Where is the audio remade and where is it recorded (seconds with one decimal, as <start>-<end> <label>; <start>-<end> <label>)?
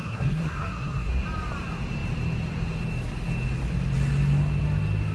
0.0-1.1 remade; 1.1-5.1 recorded